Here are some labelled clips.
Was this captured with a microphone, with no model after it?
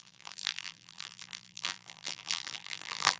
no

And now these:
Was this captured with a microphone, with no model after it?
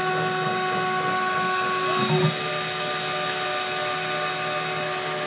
yes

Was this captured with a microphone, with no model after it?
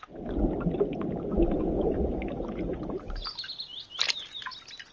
yes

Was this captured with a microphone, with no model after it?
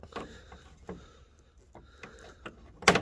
yes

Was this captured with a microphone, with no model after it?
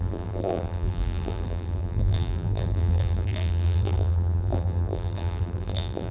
no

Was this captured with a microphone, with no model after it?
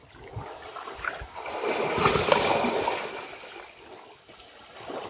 yes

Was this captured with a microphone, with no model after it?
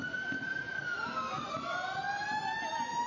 yes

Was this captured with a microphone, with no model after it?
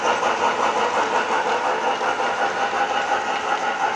yes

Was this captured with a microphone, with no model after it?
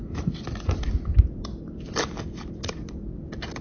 yes